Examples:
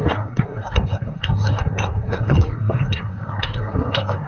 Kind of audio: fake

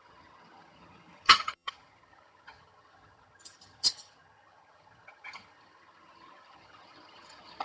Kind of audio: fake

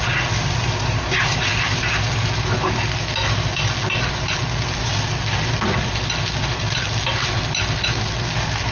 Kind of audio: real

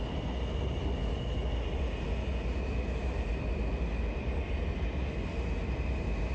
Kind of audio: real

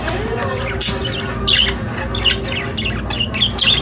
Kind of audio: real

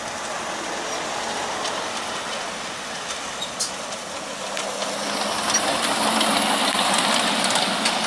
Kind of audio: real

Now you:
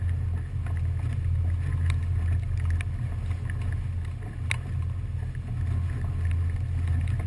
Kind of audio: real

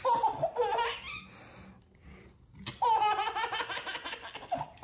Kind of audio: real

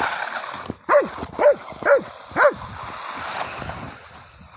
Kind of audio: real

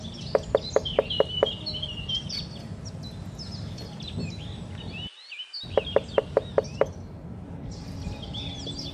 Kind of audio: real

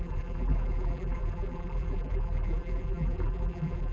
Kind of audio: fake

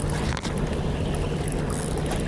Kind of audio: real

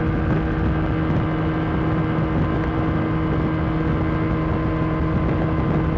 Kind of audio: real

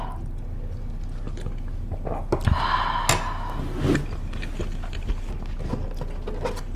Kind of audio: real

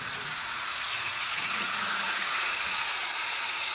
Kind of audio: fake